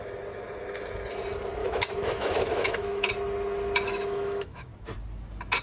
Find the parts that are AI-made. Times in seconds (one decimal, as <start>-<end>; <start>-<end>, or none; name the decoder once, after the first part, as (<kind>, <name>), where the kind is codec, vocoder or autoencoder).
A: 1.6-3.1 (autoencoder, DAC-VAE); 3.9-4.7

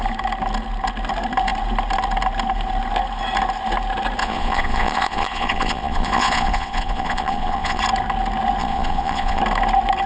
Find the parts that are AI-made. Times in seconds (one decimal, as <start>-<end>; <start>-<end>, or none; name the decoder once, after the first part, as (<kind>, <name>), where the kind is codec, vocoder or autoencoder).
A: 4.2-7.8 (vocoder, Vocos); 8.6-9.4

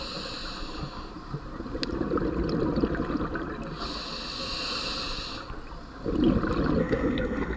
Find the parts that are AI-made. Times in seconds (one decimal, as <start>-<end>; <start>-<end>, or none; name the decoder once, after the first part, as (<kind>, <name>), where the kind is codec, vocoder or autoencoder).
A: 6.8-7.6 (codec, SNAC)

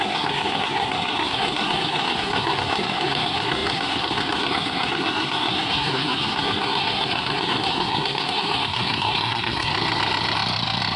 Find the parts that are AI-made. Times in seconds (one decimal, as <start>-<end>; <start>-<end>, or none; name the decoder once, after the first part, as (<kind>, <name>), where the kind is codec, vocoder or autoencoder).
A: 0.0-9.7 (codec, SNAC)

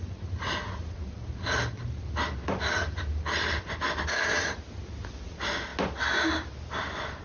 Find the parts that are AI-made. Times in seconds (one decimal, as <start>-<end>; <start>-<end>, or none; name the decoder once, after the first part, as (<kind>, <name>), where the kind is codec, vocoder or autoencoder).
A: none